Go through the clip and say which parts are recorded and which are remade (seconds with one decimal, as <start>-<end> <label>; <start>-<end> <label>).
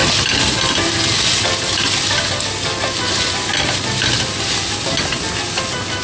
0.0-6.0 recorded